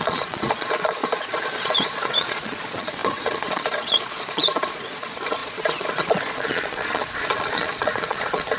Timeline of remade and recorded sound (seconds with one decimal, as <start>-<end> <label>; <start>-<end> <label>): 0.0-8.6 remade